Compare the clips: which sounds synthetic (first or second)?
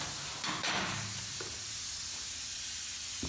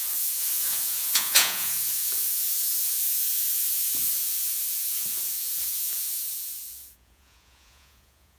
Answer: second